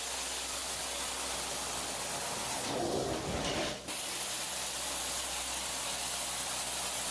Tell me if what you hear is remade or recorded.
recorded